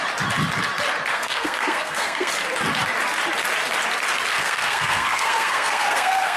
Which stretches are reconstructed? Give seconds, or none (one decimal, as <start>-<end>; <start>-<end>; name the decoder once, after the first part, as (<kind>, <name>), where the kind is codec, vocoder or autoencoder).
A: 1.1-2.3 (codec, SNAC); 4.3-6.4